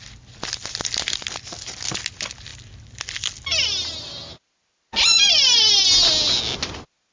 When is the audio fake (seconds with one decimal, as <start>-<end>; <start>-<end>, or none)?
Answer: none